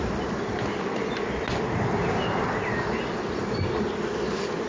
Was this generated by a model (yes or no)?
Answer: no